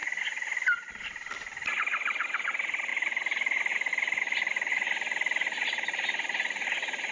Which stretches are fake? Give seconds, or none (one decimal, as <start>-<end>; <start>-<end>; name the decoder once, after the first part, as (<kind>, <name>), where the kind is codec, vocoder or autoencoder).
none